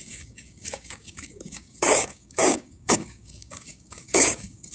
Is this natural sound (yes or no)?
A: no